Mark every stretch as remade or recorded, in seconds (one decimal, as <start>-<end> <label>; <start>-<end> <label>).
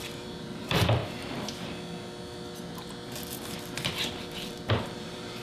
0.0-1.0 remade; 1.0-4.2 recorded; 4.2-5.4 remade